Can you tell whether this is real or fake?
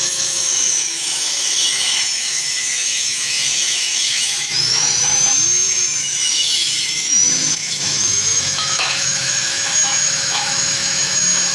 fake